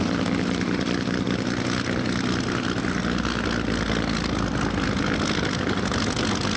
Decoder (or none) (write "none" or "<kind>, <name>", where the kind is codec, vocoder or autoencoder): none